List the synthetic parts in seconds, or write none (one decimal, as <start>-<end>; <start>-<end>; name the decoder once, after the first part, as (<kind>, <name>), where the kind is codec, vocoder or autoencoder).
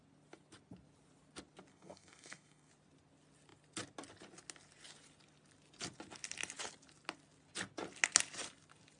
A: 1.7-2.7 (codec, SNAC)